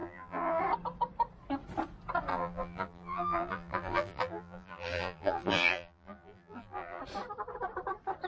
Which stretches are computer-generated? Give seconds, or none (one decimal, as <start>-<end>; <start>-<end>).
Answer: 0.0-0.6; 2.3-7.0